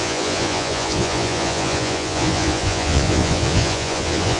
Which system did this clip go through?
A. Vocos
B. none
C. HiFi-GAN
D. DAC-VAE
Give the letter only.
A